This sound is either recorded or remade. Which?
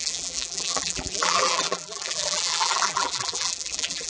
remade